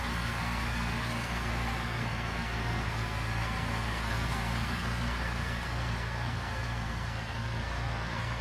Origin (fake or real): fake